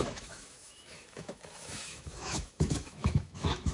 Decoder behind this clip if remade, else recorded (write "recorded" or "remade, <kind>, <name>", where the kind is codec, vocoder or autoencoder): remade, autoencoder, DAC-VAE